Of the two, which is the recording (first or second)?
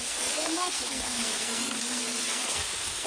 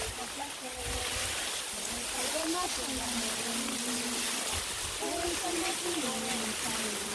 second